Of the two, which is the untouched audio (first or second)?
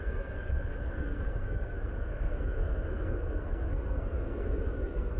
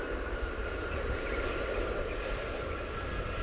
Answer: second